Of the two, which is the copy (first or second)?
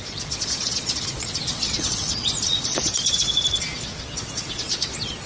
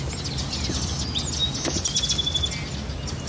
first